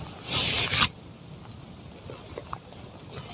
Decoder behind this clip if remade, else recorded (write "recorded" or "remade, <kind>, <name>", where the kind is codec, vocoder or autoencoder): recorded